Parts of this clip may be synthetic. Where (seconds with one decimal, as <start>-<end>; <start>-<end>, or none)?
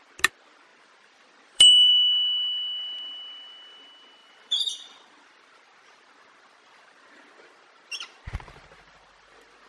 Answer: 0.7-1.9; 4.2-9.7